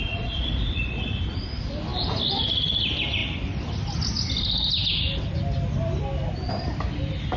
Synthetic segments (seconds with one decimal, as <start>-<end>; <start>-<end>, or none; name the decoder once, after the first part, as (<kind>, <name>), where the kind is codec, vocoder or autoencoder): 0.0-1.2 (vocoder, Vocos)